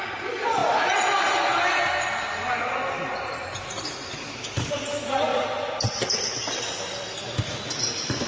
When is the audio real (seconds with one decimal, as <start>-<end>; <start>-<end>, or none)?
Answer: 0.0-5.3; 6.2-8.3